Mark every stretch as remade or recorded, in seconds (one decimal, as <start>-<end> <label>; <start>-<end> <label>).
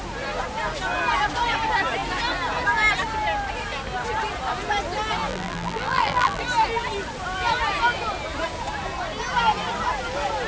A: 0.0-5.3 recorded; 5.3-6.4 remade; 6.4-10.5 recorded